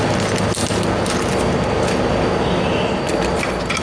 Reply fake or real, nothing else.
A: real